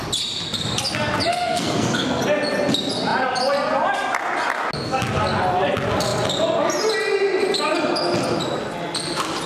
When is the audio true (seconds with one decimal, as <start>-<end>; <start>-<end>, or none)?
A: 0.0-1.3; 2.2-9.5